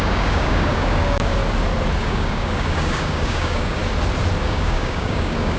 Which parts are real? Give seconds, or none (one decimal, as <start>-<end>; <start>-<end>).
1.4-2.0; 3.8-4.4